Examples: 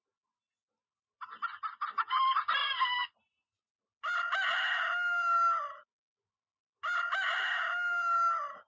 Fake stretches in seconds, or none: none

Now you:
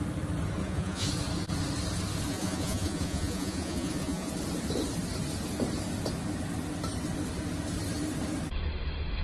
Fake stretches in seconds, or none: 0.6-1.1; 2.3-4.3